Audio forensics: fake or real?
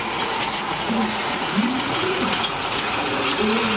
fake